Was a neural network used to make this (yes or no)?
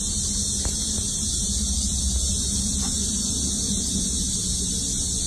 no